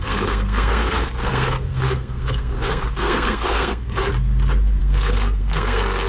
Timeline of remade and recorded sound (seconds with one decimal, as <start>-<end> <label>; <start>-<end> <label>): 0.0-4.1 remade; 4.1-4.8 recorded; 4.8-6.1 remade